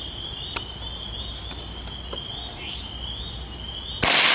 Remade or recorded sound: recorded